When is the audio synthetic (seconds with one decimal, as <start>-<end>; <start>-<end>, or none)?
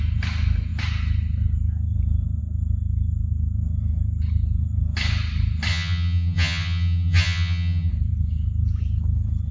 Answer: 5.7-7.9